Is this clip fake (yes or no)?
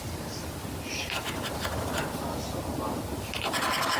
no